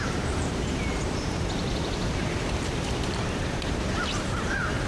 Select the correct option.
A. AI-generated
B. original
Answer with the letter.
A